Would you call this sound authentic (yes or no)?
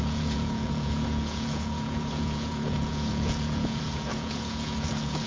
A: no